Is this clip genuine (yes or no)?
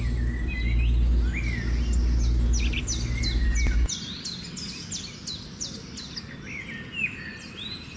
yes